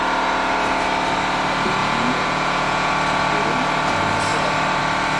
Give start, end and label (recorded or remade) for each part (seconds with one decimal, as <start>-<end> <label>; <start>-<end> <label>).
0.0-1.8 recorded; 1.8-2.9 remade; 2.9-5.2 recorded